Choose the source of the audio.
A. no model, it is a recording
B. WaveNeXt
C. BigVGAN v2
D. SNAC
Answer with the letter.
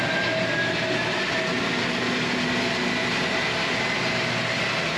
A